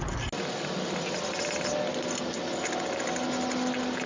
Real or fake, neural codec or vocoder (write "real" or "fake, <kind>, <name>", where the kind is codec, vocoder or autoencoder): real